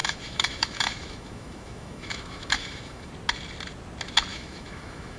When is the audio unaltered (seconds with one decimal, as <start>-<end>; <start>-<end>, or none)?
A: 3.1-4.3